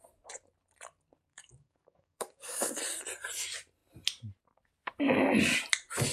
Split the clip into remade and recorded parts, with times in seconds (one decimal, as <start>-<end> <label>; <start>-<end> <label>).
0.0-1.3 recorded; 1.3-2.8 remade; 2.8-6.1 recorded